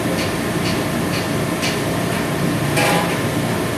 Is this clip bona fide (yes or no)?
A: yes